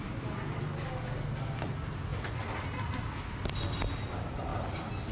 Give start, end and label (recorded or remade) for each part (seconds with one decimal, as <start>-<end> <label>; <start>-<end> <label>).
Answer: 0.0-5.1 recorded